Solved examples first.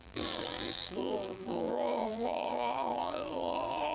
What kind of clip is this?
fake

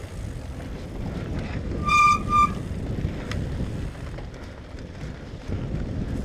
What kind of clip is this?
real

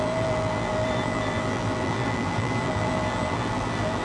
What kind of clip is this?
fake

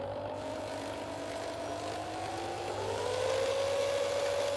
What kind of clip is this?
real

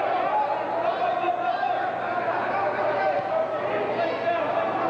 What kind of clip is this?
real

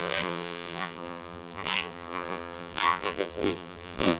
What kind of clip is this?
fake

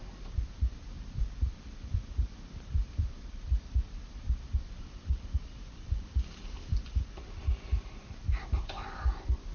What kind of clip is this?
fake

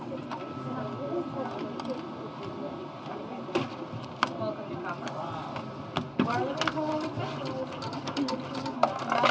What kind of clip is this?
real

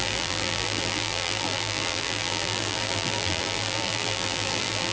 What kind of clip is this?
fake